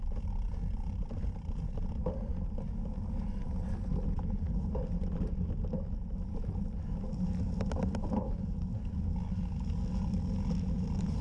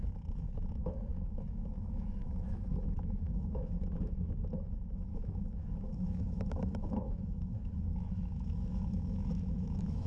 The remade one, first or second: second